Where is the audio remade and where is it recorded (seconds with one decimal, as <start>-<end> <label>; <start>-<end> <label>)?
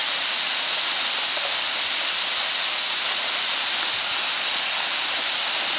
0.0-5.8 recorded